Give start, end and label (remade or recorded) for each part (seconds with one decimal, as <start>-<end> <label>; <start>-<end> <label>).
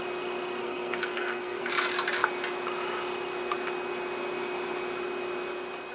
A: 0.0-0.6 recorded; 0.6-1.7 remade; 1.7-5.9 recorded